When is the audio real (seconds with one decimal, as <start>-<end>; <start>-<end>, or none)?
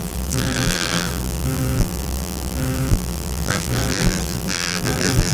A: none